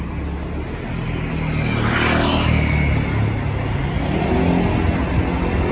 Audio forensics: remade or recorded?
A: recorded